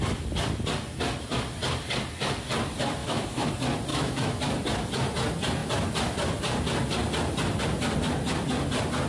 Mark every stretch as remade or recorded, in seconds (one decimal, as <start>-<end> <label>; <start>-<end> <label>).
0.0-3.0 recorded; 3.0-3.5 remade; 3.5-3.9 recorded; 3.9-4.4 remade; 4.4-9.1 recorded